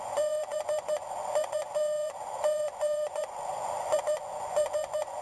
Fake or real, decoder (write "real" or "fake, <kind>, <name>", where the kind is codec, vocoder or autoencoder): fake, vocoder, Vocos